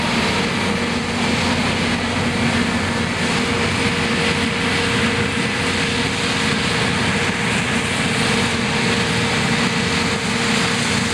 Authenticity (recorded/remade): recorded